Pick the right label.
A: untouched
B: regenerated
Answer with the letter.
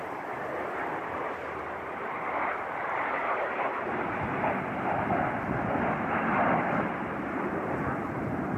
A